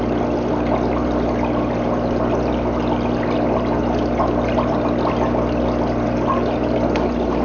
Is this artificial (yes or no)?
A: no